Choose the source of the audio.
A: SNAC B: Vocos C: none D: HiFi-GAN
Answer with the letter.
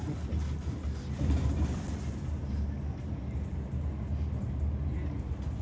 C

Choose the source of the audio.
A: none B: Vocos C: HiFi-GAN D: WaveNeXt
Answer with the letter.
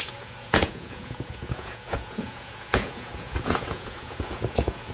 B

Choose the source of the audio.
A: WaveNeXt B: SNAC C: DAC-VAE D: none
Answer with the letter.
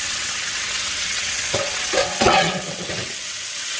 A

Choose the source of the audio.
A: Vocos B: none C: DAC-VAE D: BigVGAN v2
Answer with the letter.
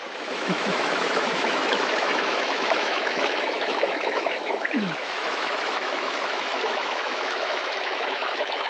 C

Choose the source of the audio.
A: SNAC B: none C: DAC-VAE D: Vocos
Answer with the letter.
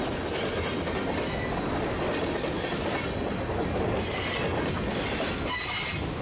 B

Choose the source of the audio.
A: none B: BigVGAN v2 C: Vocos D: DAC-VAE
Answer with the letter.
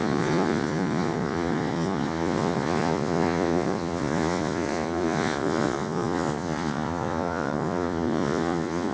C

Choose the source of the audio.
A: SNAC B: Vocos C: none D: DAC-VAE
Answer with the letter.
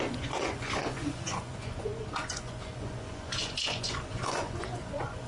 B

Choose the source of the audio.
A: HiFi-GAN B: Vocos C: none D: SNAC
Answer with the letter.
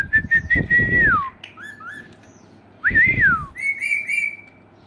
C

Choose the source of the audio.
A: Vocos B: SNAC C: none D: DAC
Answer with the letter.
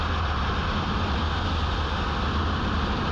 C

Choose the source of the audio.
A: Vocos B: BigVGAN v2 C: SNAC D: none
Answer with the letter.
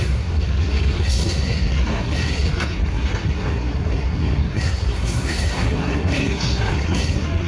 C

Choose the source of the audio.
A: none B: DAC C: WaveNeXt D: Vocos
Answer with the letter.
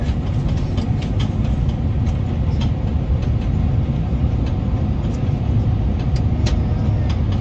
A